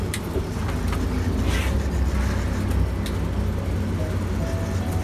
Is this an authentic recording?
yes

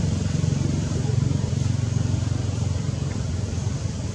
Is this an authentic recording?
no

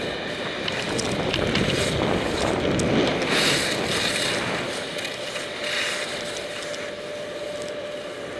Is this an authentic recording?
yes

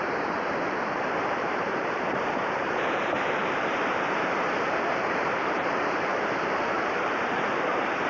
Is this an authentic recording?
no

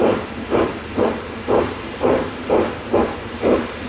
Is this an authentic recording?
no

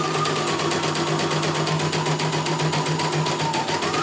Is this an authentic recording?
yes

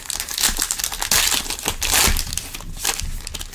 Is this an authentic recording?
yes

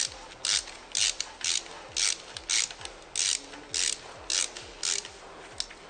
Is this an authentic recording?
yes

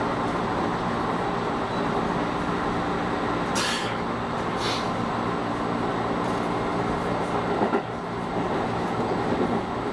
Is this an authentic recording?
yes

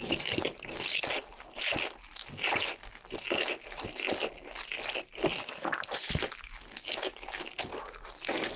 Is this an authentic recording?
yes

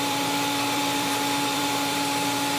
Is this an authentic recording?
no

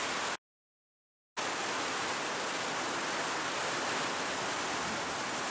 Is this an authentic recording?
yes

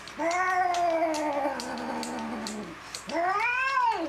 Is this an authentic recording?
yes